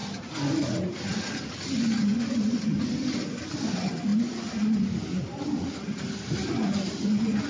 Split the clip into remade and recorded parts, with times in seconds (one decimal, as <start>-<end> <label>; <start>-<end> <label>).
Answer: 0.0-7.5 remade